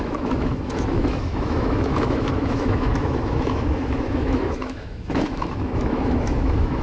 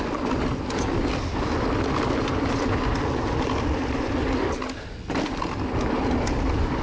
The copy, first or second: first